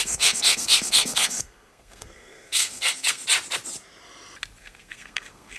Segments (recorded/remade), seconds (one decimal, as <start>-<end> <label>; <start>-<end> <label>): 0.0-3.2 remade; 3.2-4.6 recorded; 4.6-5.6 remade